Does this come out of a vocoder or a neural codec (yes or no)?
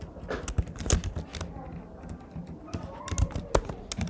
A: no